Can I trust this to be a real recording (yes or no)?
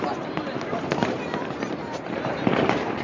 no